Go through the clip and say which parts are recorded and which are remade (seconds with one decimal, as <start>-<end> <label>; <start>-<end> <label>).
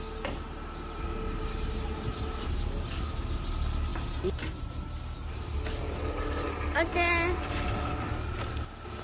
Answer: 0.0-9.0 recorded